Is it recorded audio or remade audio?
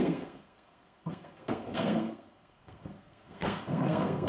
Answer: remade